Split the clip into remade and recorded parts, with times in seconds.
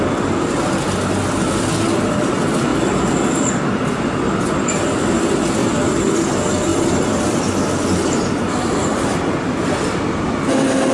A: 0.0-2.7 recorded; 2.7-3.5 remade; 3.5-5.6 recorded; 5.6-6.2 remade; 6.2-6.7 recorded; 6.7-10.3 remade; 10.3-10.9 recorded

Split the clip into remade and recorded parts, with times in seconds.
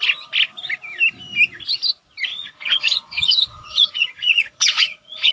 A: 0.0-2.3 recorded; 2.3-5.3 remade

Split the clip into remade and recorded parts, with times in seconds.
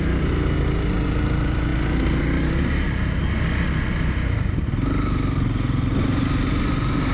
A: 0.0-7.1 recorded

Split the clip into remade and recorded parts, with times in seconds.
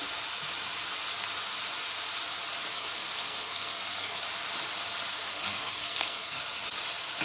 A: 0.0-2.7 recorded; 2.7-4.2 remade; 4.2-5.3 recorded; 5.3-6.4 remade; 6.4-7.2 recorded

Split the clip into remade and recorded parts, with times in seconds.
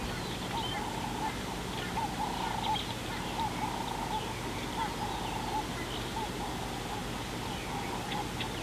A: 0.0-8.6 recorded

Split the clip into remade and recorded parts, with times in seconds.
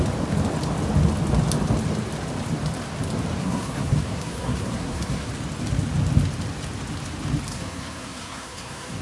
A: 0.0-3.4 recorded; 3.4-5.3 remade; 5.3-7.5 recorded; 7.5-9.0 remade